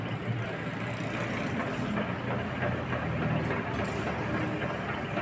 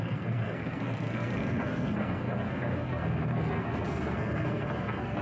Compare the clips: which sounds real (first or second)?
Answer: first